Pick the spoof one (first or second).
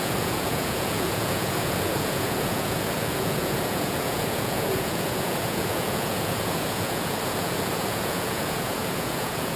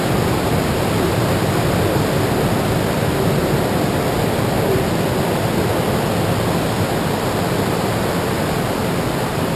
first